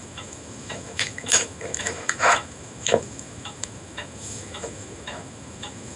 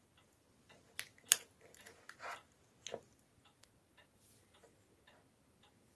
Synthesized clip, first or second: first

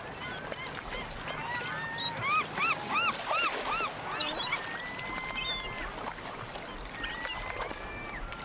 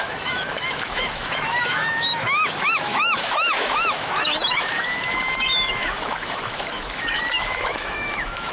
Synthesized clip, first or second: second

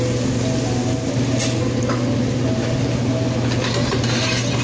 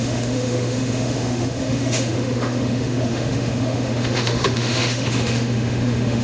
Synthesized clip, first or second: second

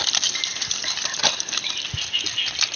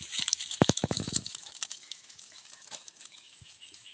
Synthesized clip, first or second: second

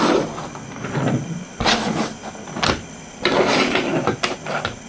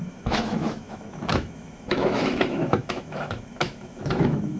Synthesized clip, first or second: second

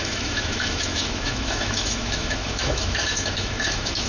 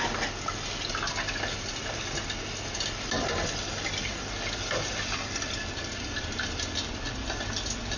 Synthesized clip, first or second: first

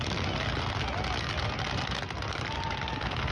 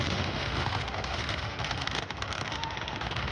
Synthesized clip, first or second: second